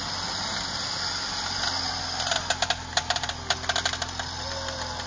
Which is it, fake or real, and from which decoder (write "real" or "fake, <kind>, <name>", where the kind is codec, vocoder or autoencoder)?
real